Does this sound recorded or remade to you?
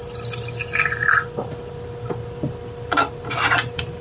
remade